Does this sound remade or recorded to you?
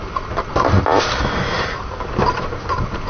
recorded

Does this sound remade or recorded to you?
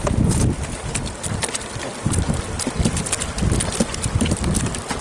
recorded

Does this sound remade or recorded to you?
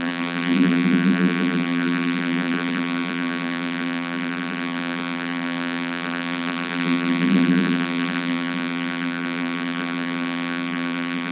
remade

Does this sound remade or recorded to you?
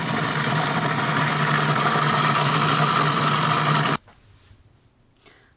recorded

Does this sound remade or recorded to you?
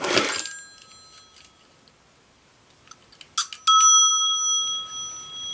recorded